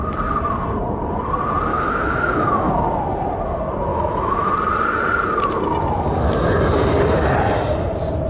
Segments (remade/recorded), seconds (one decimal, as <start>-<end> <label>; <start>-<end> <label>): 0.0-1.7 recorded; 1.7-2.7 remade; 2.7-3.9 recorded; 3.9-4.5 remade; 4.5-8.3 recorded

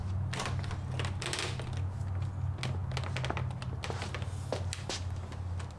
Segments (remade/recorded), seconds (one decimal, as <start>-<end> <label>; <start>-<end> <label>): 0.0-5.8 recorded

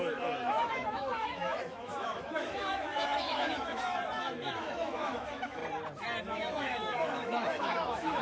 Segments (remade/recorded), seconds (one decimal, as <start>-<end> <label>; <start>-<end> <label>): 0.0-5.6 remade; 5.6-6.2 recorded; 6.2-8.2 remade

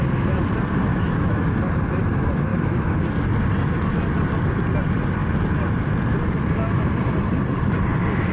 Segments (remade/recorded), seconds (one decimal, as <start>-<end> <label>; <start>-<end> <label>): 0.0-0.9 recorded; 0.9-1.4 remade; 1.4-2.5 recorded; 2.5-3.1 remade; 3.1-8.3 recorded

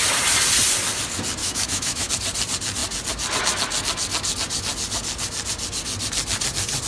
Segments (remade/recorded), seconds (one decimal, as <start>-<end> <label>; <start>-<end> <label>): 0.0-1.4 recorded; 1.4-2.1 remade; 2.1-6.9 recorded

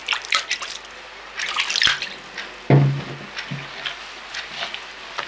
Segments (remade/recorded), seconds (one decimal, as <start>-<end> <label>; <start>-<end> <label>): 0.0-5.3 recorded

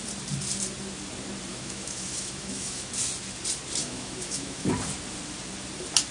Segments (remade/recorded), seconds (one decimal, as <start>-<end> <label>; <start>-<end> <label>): 0.0-1.5 recorded; 1.5-2.9 remade; 2.9-3.8 recorded; 3.8-4.7 remade; 4.7-6.1 recorded